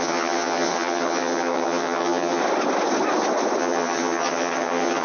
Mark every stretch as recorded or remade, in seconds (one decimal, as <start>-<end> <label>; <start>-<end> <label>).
0.0-2.4 remade; 2.4-3.6 recorded; 3.6-5.0 remade